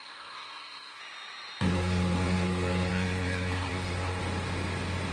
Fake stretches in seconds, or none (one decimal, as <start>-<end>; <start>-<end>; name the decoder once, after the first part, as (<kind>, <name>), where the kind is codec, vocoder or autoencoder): 0.0-1.0 (codec, SNAC); 1.6-4.2